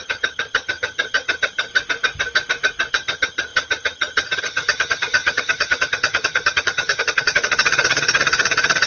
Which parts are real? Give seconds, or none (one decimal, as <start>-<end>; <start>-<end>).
1.7-2.9